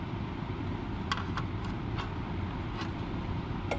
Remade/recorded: recorded